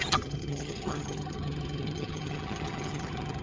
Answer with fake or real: fake